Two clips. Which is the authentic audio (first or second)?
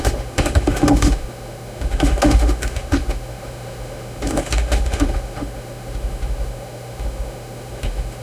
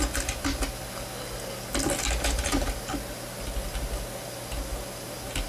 second